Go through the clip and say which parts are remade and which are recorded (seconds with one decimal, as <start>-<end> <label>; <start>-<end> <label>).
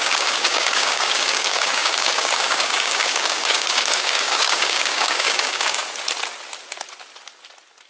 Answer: 0.0-5.8 remade; 5.8-7.9 recorded